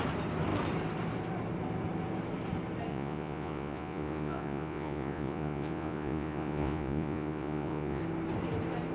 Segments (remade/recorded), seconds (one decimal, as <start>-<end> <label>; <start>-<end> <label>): 0.0-2.9 recorded; 2.9-8.0 remade; 8.0-8.9 recorded